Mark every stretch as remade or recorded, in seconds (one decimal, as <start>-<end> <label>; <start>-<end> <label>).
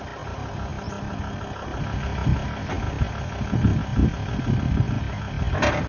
0.0-5.9 recorded